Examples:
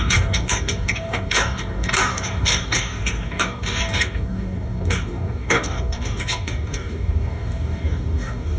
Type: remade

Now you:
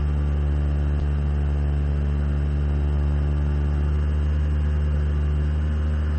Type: recorded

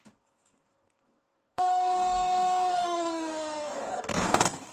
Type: remade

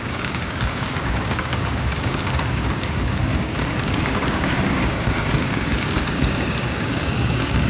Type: remade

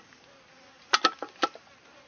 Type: recorded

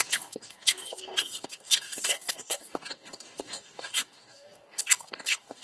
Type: remade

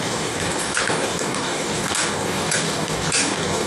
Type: remade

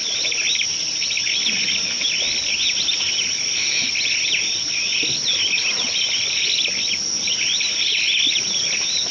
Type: recorded